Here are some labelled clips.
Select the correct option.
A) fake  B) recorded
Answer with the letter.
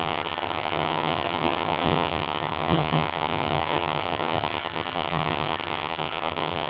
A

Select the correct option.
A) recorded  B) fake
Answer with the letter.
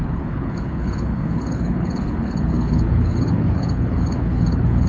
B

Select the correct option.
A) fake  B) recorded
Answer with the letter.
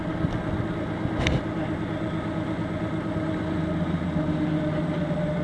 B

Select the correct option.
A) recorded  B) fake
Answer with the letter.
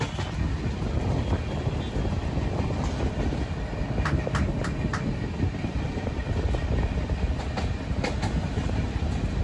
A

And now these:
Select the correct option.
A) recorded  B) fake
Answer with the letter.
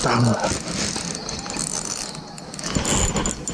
A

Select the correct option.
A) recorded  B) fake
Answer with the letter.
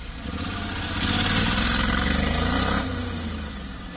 A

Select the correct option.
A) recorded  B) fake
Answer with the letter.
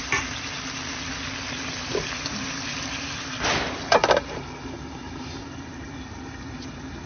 A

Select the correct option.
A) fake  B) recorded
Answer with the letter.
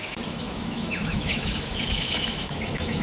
A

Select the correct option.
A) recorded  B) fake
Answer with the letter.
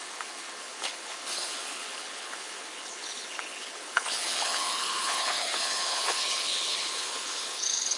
B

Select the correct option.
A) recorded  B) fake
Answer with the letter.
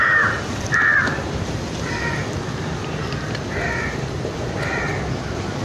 A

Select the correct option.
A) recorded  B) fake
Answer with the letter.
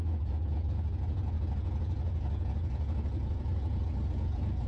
B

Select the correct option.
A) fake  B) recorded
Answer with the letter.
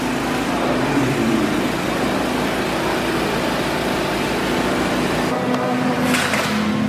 B